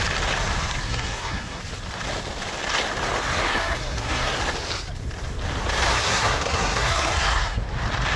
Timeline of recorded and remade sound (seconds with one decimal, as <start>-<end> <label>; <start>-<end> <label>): 0.0-0.8 recorded; 0.8-1.6 remade; 1.6-3.5 recorded; 3.5-4.4 remade; 4.4-5.9 recorded; 5.9-7.6 remade; 7.6-8.2 recorded